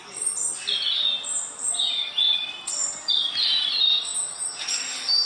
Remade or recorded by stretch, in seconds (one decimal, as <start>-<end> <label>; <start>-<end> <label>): 0.0-5.3 recorded